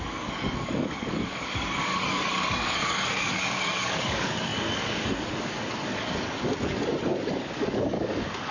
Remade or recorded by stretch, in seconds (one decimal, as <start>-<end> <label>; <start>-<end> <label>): 0.0-8.5 remade